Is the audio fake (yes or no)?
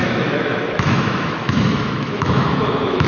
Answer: yes